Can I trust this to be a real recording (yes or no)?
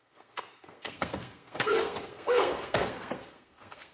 no